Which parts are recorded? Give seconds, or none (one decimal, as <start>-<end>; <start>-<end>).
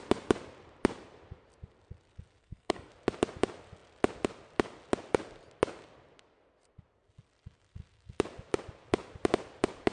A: 0.0-2.4; 2.9-9.9